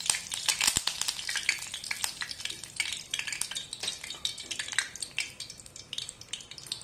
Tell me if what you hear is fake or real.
real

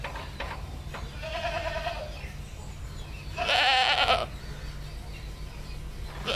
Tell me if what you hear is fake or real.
real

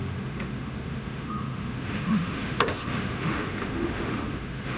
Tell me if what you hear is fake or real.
fake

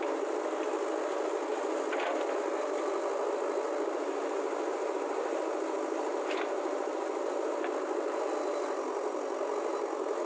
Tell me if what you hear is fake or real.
real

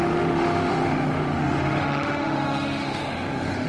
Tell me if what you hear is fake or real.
fake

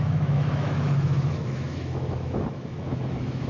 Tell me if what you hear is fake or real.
fake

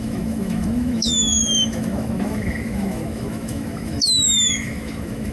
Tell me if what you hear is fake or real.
fake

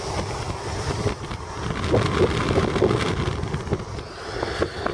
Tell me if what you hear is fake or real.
real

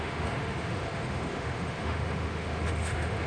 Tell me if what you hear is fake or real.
fake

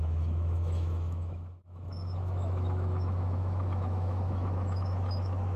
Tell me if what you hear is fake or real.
fake